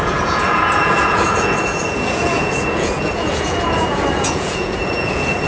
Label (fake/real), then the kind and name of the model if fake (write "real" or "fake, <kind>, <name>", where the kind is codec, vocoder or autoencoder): fake, vocoder, Vocos